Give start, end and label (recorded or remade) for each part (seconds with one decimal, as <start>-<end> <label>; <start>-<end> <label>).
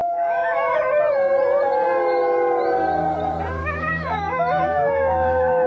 0.0-0.8 remade; 0.8-3.6 recorded; 3.6-5.7 remade